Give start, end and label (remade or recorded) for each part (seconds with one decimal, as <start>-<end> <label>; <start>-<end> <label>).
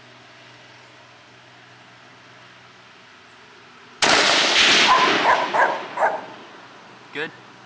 0.0-7.7 recorded